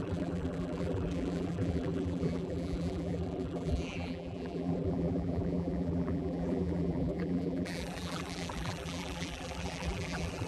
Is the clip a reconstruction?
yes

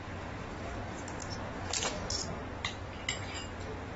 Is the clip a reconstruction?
no